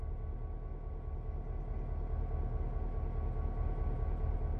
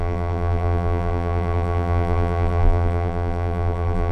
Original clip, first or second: first